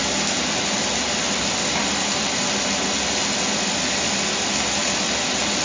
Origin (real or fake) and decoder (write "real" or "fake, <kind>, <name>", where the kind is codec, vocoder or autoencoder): real